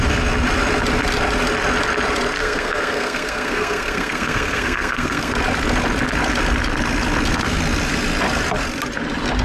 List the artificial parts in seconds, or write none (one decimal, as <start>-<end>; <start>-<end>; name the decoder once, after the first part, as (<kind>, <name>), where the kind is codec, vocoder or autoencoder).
2.4-5.3 (codec, SNAC)